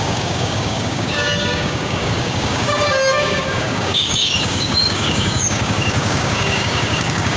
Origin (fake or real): fake